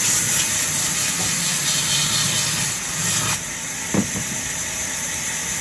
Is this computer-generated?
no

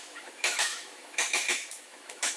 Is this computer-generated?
yes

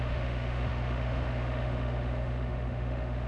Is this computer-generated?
yes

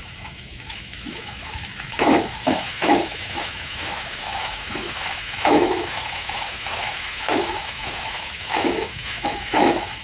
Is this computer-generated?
yes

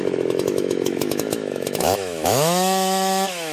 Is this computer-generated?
yes